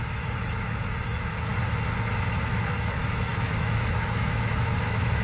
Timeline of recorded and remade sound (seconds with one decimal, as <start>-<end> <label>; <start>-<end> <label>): 0.0-1.5 remade; 1.5-2.8 recorded; 2.8-5.2 remade